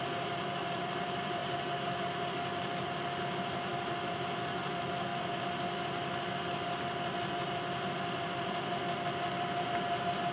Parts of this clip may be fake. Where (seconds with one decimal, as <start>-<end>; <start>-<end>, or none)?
0.0-1.4; 2.7-3.7; 4.6-5.1; 7.9-10.3